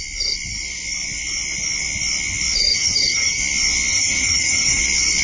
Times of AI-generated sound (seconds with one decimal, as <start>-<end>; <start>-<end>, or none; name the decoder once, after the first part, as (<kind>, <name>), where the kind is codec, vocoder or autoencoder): 2.7-3.4 (vocoder, HiFi-GAN); 3.9-4.8